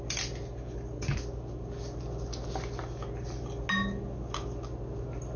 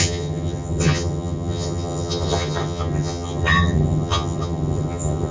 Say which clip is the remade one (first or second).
second